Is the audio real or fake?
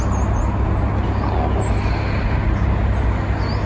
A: real